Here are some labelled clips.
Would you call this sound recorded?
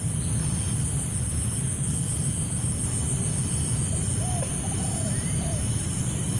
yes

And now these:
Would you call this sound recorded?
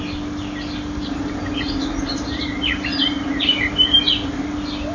yes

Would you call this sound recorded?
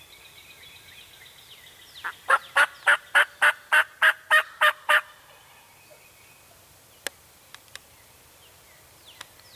yes